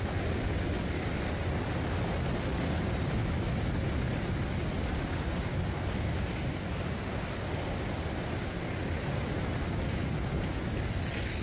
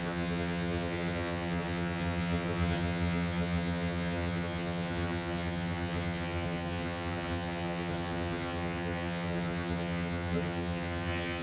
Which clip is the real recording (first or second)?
first